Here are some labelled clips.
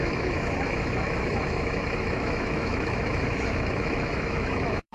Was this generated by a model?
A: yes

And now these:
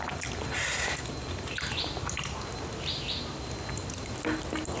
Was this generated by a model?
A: no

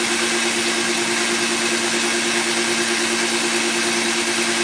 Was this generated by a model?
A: no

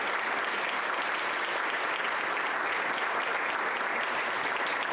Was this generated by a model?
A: no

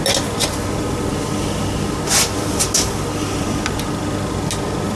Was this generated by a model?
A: no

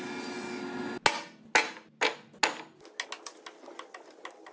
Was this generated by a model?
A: no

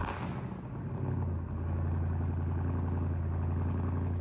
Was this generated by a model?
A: no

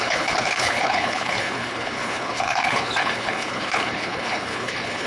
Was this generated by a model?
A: yes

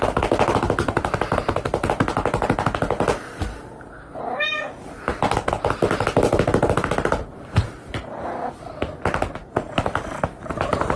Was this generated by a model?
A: no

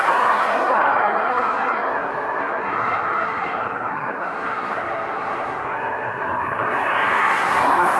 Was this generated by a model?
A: yes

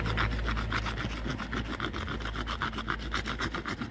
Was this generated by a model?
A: no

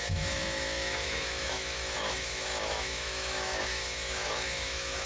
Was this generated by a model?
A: yes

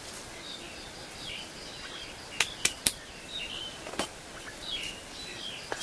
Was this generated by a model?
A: no